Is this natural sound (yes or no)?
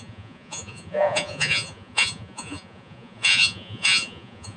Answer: no